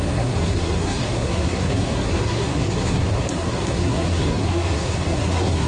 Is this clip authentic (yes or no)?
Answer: no